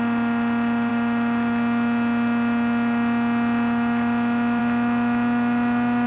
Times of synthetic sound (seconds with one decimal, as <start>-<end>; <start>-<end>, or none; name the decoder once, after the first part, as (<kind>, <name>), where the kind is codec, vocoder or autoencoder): none